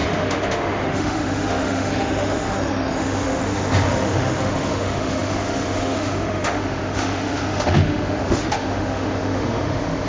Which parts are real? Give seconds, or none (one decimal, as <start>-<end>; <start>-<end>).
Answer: none